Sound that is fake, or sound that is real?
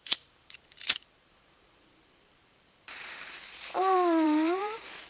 fake